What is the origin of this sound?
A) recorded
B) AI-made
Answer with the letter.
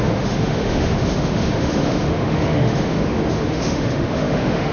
B